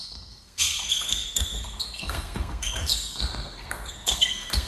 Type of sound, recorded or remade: remade